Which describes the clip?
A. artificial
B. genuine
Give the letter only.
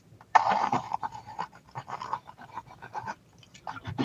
A